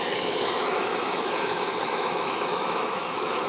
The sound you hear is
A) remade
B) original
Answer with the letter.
A